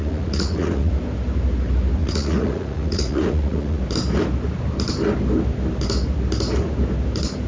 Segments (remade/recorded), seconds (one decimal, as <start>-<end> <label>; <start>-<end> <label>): 0.0-0.9 remade; 0.9-2.0 recorded; 2.0-3.8 remade; 3.8-7.5 recorded